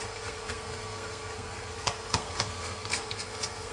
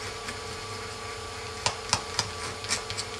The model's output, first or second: first